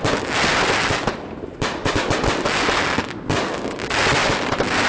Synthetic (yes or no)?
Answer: no